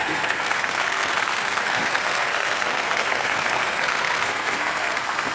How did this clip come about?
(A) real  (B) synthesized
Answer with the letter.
B